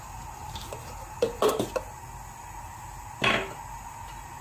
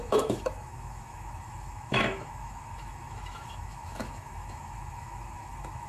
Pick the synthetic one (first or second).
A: second